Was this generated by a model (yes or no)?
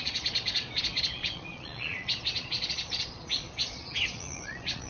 yes